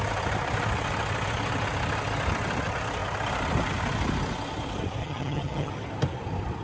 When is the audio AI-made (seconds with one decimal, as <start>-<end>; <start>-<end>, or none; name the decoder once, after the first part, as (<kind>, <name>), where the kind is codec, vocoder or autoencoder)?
5.0-5.7 (vocoder, HiFi-GAN)

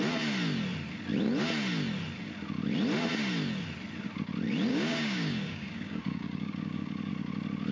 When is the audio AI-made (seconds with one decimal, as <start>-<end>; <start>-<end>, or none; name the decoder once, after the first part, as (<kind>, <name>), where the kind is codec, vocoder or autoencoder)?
4.7-7.1 (codec, DAC)

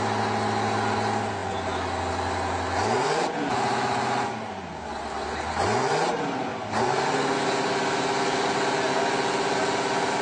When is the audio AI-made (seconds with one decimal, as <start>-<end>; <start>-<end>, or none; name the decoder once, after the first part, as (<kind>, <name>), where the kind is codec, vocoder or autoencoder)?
none

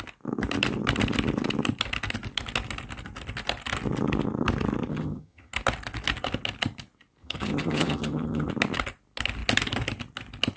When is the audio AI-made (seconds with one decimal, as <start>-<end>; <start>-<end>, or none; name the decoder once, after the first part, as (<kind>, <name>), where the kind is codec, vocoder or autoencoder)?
4.9-5.5 (vocoder, HiFi-GAN); 7.2-8.5

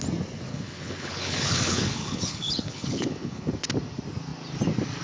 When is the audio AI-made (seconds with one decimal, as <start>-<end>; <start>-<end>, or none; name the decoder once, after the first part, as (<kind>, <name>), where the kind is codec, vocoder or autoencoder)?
0.5-3.5 (codec, HILCodec)

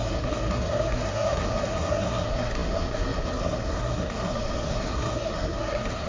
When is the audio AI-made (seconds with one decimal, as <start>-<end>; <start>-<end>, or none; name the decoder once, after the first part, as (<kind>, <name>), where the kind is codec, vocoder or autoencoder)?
0.0-6.1 (codec, SNAC)